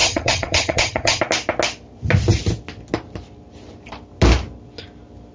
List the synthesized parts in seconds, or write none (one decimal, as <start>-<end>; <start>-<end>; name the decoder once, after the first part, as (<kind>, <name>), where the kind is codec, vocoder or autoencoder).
0.0-1.2 (vocoder, HiFi-GAN)

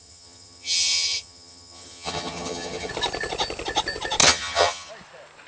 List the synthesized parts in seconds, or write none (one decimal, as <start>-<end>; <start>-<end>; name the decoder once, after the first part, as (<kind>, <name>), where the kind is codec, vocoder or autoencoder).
0.0-2.9 (vocoder, HiFi-GAN); 4.2-4.9

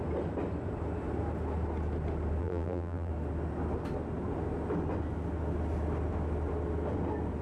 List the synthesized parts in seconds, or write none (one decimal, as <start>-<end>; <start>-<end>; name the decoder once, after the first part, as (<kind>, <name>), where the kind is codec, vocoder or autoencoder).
2.4-3.1 (vocoder, BigVGAN v2)

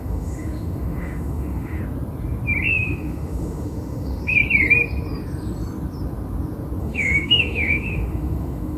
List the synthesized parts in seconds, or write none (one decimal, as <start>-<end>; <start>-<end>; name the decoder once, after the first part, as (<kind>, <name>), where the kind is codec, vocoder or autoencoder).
0.0-1.8 (autoencoder, DAC-VAE); 2.7-4.4; 6.8-8.8